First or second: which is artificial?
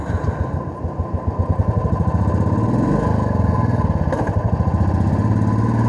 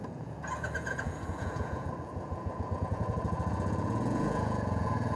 second